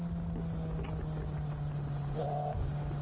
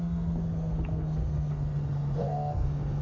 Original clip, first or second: first